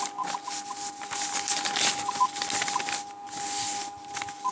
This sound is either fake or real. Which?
real